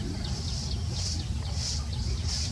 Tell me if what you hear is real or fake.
real